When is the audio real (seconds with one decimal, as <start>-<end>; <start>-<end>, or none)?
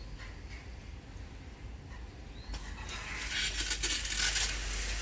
0.0-5.0